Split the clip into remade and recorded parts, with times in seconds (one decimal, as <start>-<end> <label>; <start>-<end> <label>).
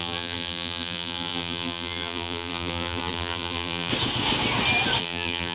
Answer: 0.0-3.9 remade; 3.9-5.0 recorded; 5.0-5.5 remade